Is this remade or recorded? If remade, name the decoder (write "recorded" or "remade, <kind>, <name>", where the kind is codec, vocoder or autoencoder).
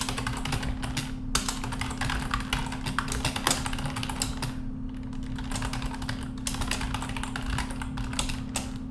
recorded